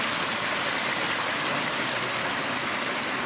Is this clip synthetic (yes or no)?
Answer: no